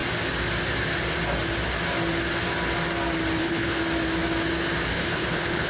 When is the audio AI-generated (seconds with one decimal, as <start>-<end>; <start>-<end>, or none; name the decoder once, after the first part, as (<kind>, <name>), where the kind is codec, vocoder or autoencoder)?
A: 3.4-3.8 (codec, HILCodec); 4.9-5.7

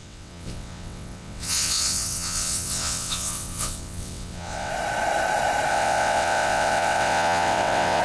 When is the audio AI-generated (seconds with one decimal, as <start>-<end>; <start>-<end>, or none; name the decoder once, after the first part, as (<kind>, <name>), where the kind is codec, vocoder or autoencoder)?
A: 0.0-4.7 (vocoder, WaveNeXt); 5.7-8.0